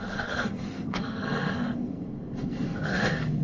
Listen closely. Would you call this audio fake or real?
fake